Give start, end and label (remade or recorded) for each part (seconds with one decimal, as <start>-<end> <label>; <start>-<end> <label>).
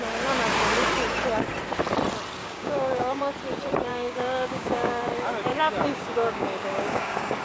0.0-2.4 recorded; 2.4-3.2 remade; 3.2-3.9 recorded; 3.9-5.0 remade; 5.0-5.5 recorded; 5.5-7.4 remade